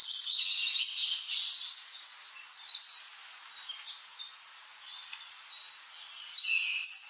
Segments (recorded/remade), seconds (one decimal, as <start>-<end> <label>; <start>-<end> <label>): 0.0-0.6 remade; 0.6-7.1 recorded